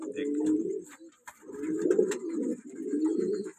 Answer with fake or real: real